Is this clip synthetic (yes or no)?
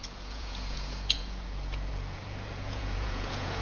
yes